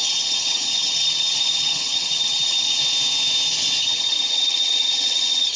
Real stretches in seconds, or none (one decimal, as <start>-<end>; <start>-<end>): 2.8-3.8